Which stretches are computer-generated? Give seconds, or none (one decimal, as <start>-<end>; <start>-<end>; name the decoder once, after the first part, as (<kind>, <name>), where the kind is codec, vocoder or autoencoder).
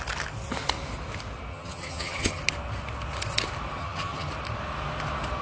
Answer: 1.5-2.4 (vocoder, HiFi-GAN); 3.8-4.3